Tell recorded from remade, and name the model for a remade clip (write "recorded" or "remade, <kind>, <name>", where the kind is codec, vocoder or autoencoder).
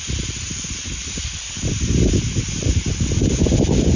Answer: recorded